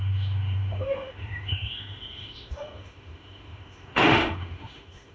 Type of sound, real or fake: fake